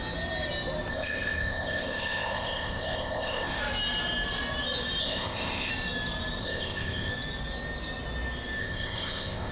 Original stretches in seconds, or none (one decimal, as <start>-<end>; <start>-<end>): 0.0-0.9; 3.6-5.0; 5.7-6.4; 7.1-8.6

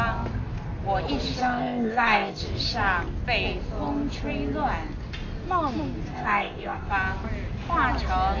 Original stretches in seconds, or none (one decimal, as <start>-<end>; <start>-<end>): 0.0-1.4; 2.4-6.1; 6.9-8.4

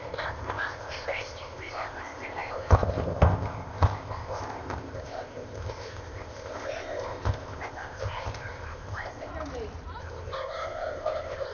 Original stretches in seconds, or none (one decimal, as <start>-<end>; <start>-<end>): 9.3-10.0

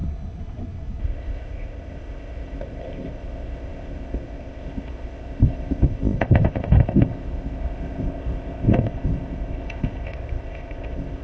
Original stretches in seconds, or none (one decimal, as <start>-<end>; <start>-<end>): 0.0-1.0

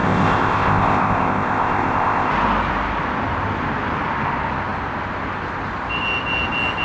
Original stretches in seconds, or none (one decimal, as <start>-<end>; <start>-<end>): 2.3-6.8

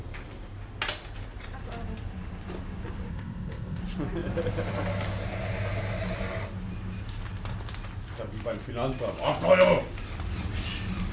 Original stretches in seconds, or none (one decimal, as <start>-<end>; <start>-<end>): 0.0-3.1; 3.8-11.1

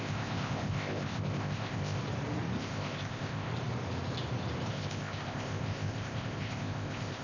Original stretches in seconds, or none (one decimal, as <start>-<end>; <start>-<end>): 2.0-2.6; 3.5-4.7